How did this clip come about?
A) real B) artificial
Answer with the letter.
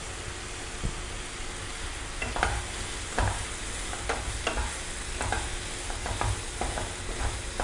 A